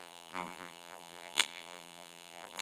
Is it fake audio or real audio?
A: fake